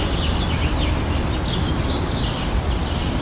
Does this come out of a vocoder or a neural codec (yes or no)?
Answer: no